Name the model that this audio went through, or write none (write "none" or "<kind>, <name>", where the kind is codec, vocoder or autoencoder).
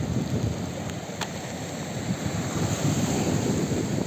none